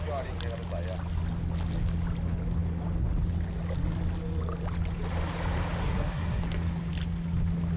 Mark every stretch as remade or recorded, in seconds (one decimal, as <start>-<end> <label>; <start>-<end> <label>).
0.0-5.8 recorded; 5.8-6.4 remade; 6.4-7.8 recorded